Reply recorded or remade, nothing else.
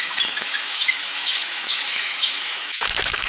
remade